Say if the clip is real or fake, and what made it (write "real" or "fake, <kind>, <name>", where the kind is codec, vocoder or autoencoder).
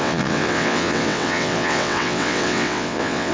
fake, vocoder, WaveNeXt